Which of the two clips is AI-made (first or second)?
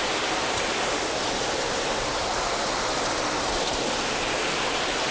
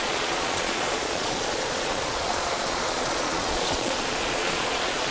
second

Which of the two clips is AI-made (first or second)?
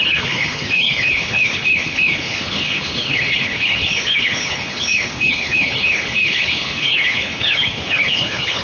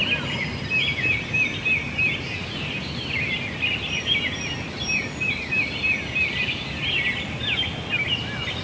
first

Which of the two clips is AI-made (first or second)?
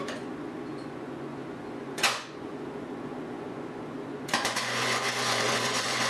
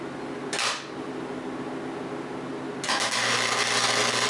first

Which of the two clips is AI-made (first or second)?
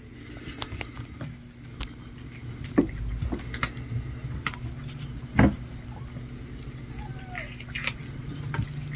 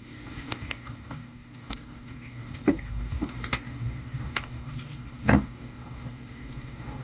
second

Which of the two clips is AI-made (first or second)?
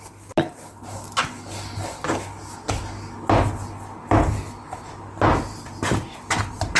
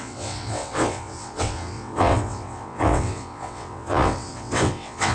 second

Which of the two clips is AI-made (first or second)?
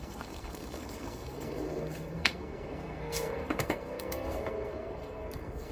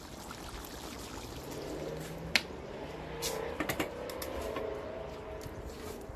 first